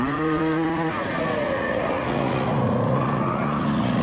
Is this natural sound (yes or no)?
no